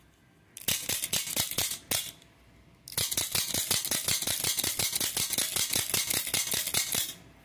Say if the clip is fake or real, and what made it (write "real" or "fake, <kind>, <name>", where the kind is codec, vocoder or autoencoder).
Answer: real